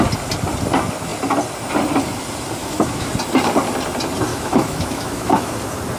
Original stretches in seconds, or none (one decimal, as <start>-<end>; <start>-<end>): 0.0-2.6; 3.1-4.3; 5.5-6.0